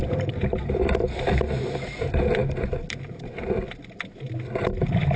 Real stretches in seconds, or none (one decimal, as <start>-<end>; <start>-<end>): 0.0-5.2